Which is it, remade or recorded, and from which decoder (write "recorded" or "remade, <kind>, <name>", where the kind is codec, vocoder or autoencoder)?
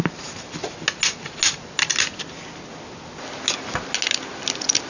recorded